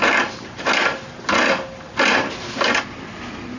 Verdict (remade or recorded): recorded